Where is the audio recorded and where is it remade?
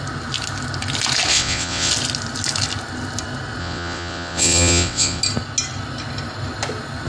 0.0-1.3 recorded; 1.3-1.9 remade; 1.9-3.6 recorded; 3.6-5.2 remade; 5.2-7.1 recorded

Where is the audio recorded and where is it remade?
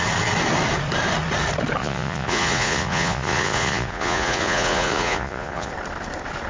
0.0-1.8 recorded; 1.8-5.7 remade; 5.7-6.5 recorded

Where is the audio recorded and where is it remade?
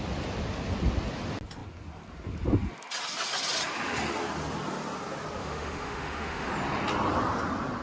0.0-5.4 recorded; 5.4-6.5 remade; 6.5-7.8 recorded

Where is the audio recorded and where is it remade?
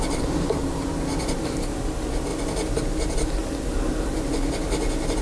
0.0-0.6 remade; 0.6-1.3 recorded; 1.3-2.3 remade; 2.3-3.0 recorded; 3.0-3.4 remade; 3.4-5.2 recorded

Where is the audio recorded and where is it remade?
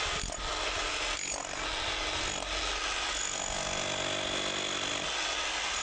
0.0-5.8 recorded